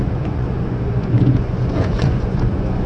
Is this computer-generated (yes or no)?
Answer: yes